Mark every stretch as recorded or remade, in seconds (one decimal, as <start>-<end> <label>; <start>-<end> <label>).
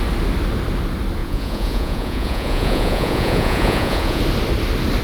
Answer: 0.0-1.2 recorded; 1.2-4.2 remade; 4.2-5.0 recorded